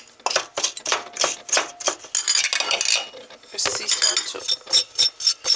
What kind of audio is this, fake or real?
real